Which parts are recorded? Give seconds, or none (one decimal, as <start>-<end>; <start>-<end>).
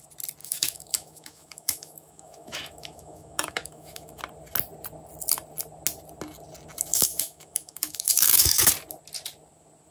0.0-0.4; 4.2-6.9; 8.7-9.9